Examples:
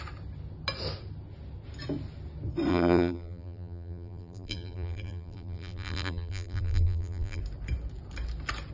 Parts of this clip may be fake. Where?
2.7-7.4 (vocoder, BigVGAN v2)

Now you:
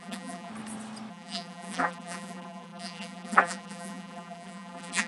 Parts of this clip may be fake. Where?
0.0-0.5 (vocoder, BigVGAN v2); 1.1-5.1

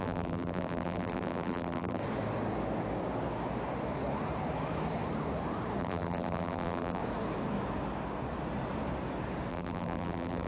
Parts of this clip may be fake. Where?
0.0-2.0 (vocoder, BigVGAN v2); 5.8-7.0; 9.5-10.5

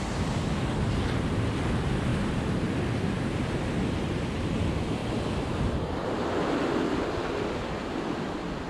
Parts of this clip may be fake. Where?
2.1-3.1 (vocoder, BigVGAN v2); 5.0-7.0

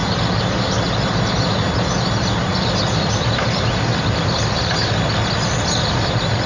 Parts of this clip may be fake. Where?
0.0-0.6 (vocoder, BigVGAN v2); 2.5-4.7

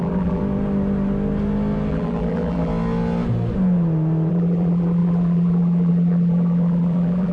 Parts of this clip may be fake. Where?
0.0-0.4 (vocoder, BigVGAN v2); 1.9-2.7; 4.3-7.3

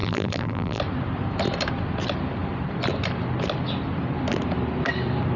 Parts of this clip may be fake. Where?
0.0-0.8 (vocoder, BigVGAN v2)

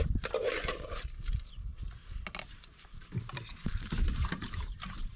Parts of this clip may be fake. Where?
0.0-1.7 (vocoder, BigVGAN v2); 2.6-5.2